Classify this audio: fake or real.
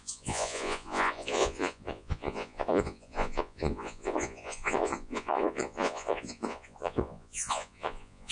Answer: fake